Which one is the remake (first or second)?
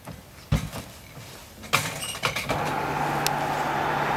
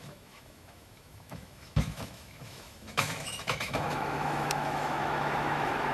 second